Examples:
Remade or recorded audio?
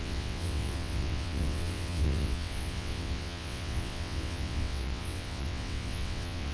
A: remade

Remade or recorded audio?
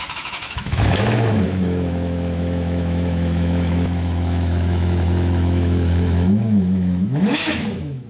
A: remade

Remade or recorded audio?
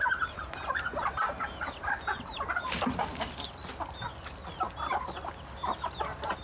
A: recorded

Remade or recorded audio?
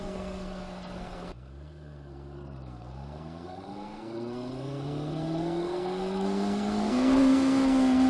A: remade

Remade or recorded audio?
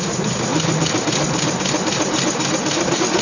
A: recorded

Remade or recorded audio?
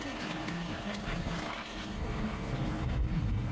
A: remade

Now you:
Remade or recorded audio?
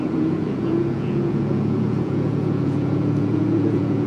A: remade